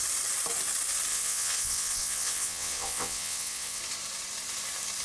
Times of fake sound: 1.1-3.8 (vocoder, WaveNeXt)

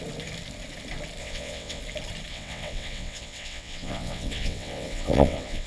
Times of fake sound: 1.2-1.8 (vocoder, WaveNeXt); 2.3-5.7

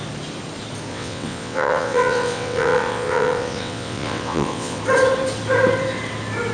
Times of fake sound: 0.9-4.8 (vocoder, WaveNeXt)

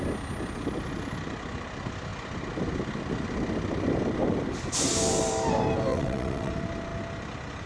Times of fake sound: 5.9-6.5 (vocoder, WaveNeXt)